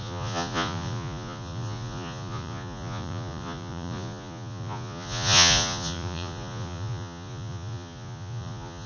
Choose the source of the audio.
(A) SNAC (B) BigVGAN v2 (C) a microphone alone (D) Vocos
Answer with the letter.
D